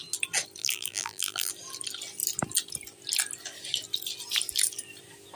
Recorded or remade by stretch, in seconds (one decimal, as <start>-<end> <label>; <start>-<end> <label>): 0.0-0.6 recorded; 0.6-1.5 remade; 1.5-5.4 recorded